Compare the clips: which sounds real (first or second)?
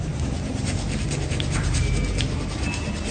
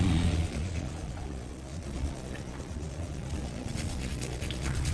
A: first